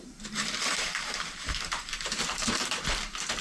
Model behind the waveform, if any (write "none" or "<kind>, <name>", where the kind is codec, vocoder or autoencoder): vocoder, BigVGAN v2